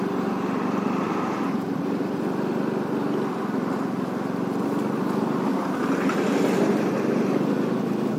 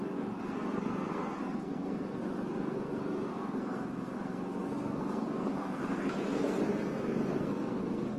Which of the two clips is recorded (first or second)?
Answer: first